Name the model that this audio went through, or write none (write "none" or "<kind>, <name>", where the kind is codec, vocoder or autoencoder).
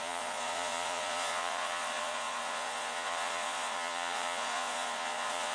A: vocoder, Vocos